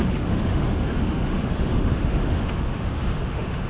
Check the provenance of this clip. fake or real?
fake